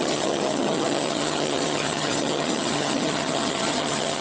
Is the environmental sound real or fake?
fake